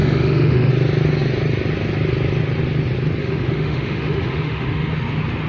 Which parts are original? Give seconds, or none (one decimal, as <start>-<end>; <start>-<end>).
0.7-3.2; 4.9-5.5